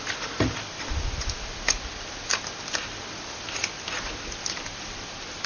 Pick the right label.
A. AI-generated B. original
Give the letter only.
B